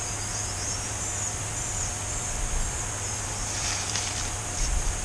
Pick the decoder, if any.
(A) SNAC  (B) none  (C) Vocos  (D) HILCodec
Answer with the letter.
B